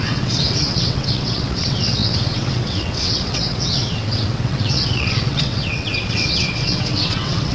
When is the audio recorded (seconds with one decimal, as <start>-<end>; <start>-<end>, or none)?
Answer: none